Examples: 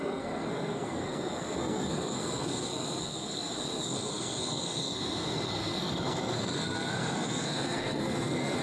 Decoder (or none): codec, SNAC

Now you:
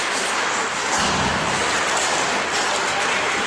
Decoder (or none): none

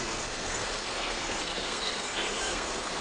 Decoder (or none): codec, SNAC